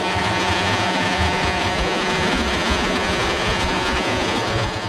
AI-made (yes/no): yes